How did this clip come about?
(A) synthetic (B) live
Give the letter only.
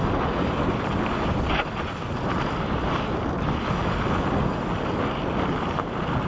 B